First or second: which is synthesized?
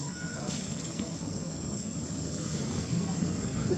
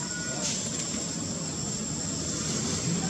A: first